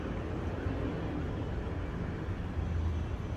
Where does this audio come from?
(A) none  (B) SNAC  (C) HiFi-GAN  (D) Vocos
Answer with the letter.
A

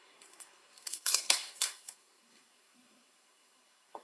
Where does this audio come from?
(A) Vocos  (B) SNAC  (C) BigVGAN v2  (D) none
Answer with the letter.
B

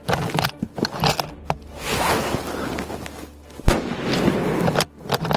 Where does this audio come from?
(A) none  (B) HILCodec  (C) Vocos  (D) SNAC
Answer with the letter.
A